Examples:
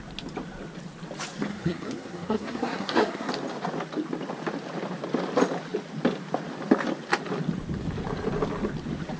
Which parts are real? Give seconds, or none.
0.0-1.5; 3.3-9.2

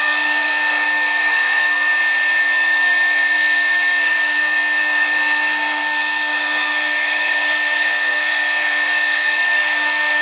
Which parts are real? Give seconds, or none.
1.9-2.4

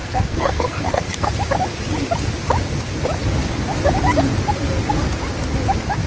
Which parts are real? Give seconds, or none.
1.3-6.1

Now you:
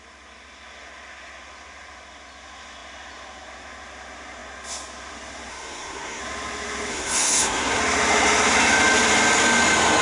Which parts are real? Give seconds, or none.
0.0-5.5; 6.2-6.9; 7.8-10.0

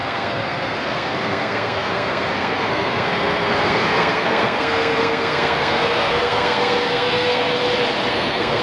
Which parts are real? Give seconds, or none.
7.5-8.1

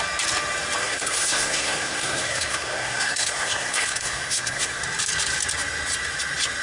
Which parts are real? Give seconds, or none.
0.0-0.8; 4.8-6.6

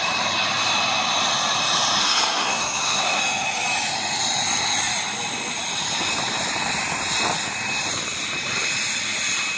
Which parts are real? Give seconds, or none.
0.0-2.0; 3.2-9.6